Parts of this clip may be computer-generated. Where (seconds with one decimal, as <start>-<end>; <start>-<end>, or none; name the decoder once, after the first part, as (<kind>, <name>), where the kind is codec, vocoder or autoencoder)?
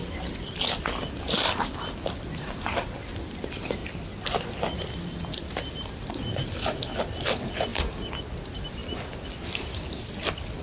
none